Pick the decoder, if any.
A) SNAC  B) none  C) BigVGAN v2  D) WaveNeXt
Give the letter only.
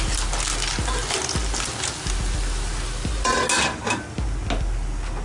B